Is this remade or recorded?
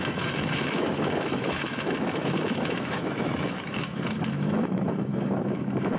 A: remade